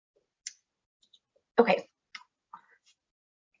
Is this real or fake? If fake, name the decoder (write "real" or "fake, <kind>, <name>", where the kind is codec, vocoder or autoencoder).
real